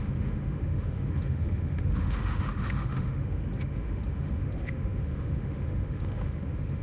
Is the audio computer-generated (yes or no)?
yes